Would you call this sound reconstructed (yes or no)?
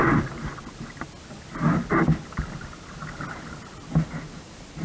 no